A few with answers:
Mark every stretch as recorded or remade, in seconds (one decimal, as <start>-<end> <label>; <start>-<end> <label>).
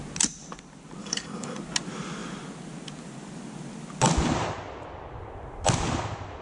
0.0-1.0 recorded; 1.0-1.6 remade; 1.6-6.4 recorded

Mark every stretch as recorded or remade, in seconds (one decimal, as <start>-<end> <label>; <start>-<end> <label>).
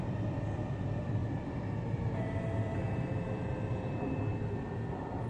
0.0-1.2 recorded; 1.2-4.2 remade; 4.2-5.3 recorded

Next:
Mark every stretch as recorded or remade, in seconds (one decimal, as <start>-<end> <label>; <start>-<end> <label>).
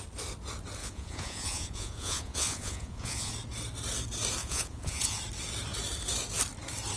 0.0-0.8 recorded; 0.8-3.3 remade; 3.3-4.4 recorded; 4.4-5.2 remade; 5.2-7.0 recorded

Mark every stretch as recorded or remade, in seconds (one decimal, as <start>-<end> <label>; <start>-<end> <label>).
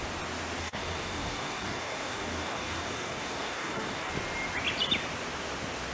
0.0-0.6 recorded; 0.6-4.1 remade; 4.1-5.9 recorded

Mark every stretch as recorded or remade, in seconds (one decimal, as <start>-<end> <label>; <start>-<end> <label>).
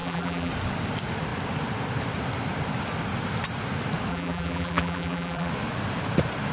0.0-0.5 remade; 0.5-4.1 recorded; 4.1-5.5 remade; 5.5-6.5 recorded